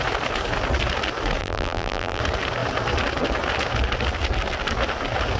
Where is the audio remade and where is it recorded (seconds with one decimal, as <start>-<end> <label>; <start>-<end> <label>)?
0.0-1.4 recorded; 1.4-2.2 remade; 2.2-5.4 recorded